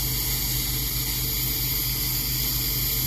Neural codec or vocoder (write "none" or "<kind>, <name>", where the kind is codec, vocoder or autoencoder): none